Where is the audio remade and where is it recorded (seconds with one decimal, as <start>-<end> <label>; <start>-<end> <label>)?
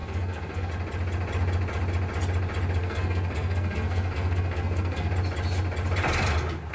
0.0-0.7 remade; 0.7-2.8 recorded; 2.8-5.1 remade; 5.1-6.7 recorded